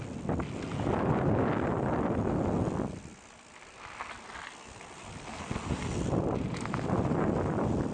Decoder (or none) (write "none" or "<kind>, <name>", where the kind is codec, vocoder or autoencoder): none